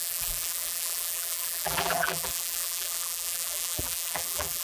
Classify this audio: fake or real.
fake